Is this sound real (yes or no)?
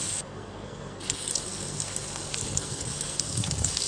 no